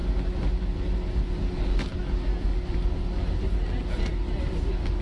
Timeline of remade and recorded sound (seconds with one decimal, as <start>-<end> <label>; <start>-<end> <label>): 0.0-5.0 recorded